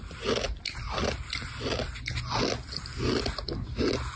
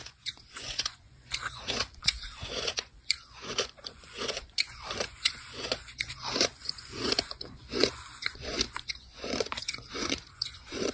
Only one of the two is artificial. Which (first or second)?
second